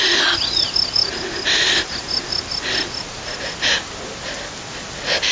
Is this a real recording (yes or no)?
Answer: yes